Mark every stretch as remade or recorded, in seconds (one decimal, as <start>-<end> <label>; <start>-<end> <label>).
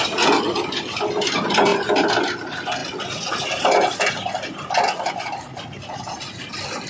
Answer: 0.0-6.9 recorded